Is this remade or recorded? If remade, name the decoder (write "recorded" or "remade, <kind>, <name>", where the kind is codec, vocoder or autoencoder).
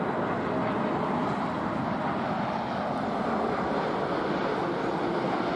recorded